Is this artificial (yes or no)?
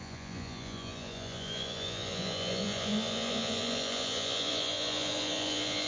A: yes